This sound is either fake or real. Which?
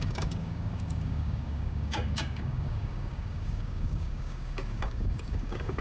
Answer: fake